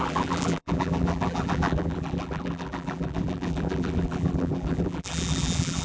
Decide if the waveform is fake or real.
fake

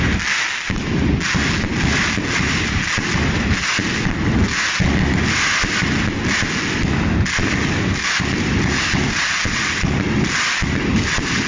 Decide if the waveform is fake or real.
real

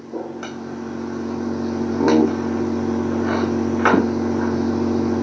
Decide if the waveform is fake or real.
real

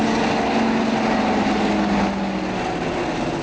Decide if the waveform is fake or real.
real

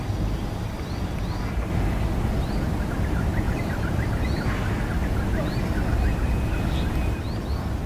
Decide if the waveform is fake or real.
real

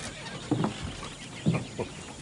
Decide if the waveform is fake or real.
real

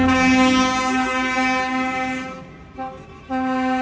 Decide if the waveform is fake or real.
real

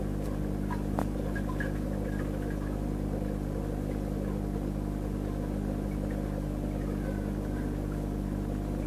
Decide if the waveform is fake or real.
real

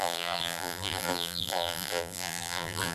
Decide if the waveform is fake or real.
fake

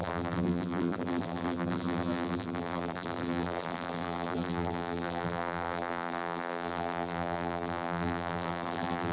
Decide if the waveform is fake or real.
fake